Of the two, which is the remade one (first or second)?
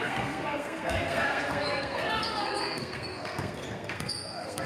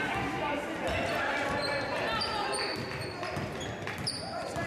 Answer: first